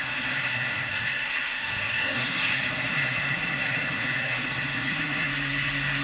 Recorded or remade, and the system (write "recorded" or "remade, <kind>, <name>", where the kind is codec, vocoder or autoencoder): remade, codec, SNAC